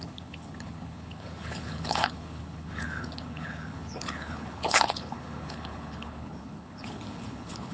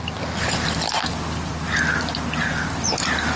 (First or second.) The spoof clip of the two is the first